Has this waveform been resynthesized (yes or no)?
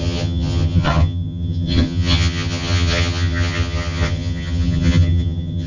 yes